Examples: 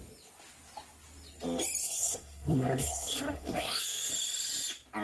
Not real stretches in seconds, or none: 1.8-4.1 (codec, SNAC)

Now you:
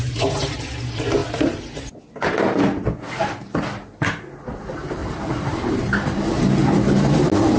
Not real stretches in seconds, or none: 5.0-6.2 (vocoder, BigVGAN v2)